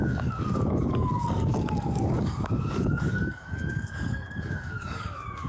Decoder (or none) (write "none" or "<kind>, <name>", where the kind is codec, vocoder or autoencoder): codec, DAC